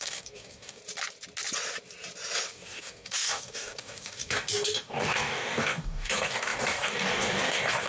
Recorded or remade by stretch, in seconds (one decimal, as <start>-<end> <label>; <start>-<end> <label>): 0.0-0.8 remade; 0.8-2.5 recorded; 2.5-7.9 remade